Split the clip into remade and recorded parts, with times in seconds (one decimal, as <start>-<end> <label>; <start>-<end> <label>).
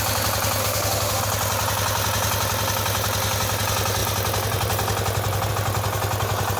0.0-0.6 recorded; 0.6-1.2 remade; 1.2-6.6 recorded